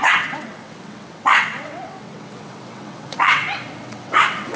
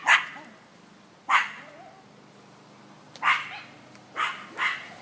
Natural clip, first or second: second